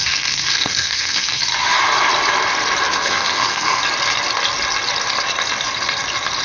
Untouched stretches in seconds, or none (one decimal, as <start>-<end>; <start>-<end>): 1.4-2.9; 3.8-6.4